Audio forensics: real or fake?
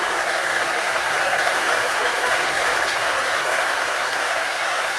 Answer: fake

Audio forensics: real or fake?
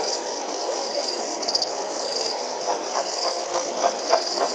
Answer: fake